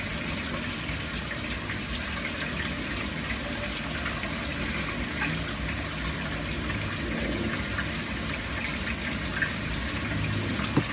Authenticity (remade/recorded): recorded